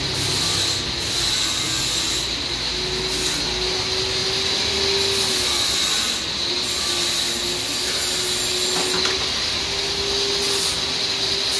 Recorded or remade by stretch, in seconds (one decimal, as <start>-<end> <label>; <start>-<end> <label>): 0.0-11.6 recorded